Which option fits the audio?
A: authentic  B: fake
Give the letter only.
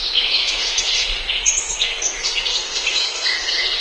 B